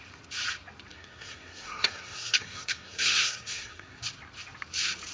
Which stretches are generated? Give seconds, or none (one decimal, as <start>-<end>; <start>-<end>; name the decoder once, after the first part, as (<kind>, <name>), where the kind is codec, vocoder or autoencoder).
0.9-4.0 (codec, SNAC)